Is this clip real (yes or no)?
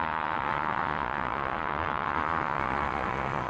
no